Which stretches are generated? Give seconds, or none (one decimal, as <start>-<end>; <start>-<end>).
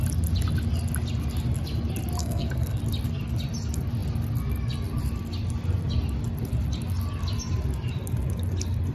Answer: 2.2-2.8